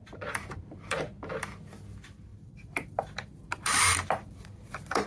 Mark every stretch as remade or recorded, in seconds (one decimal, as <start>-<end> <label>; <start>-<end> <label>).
0.0-1.0 remade; 1.0-2.3 recorded; 2.3-5.1 remade